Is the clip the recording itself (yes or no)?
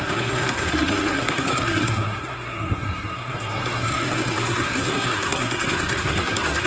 no